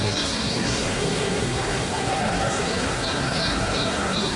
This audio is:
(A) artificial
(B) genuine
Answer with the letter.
A